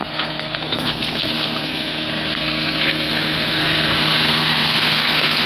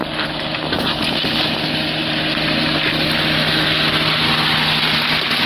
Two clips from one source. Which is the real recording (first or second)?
second